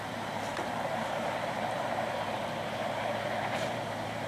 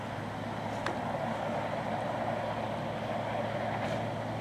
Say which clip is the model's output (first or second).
first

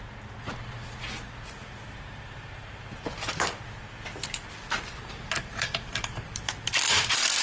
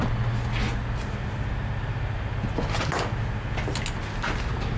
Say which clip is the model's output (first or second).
first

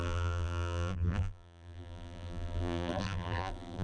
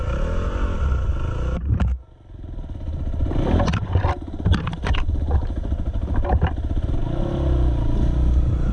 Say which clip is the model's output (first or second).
first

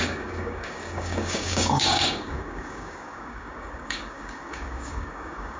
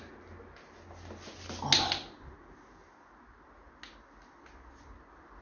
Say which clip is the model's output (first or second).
first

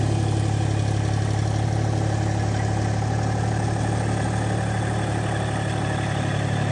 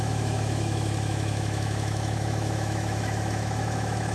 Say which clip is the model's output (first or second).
second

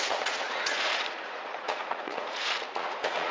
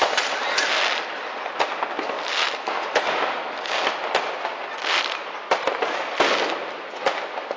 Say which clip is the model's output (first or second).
first